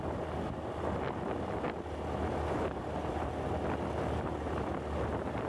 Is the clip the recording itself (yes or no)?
yes